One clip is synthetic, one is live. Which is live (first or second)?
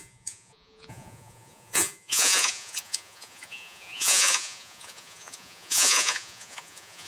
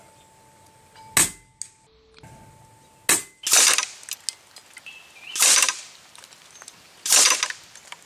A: second